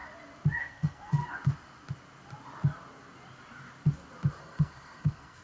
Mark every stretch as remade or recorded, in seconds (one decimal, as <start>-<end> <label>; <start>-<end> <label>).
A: 0.0-0.6 recorded; 0.6-1.2 remade; 1.2-4.4 recorded; 4.4-5.4 remade